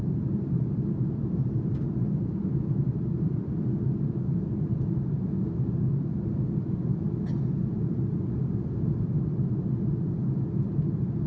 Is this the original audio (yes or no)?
yes